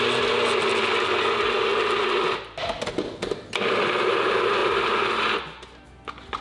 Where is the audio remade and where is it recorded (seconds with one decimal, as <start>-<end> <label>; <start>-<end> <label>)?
0.0-6.4 recorded